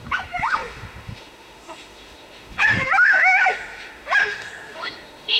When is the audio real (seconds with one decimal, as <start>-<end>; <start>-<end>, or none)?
none